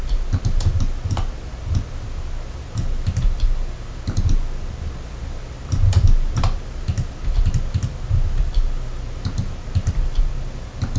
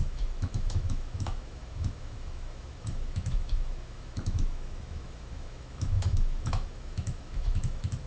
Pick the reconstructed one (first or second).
second